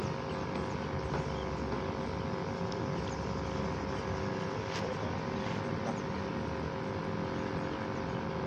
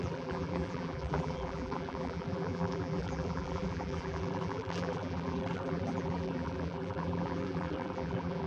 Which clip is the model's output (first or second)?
second